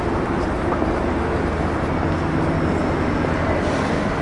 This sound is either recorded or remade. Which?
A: recorded